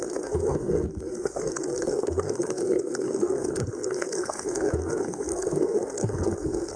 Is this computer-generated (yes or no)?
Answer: yes